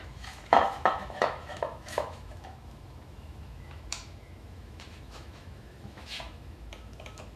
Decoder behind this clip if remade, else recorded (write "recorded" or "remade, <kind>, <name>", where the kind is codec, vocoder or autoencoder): remade, autoencoder, DAC-VAE